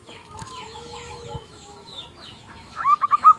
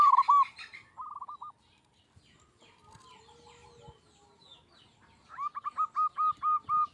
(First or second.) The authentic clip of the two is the second